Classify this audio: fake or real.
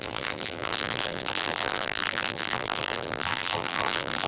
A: fake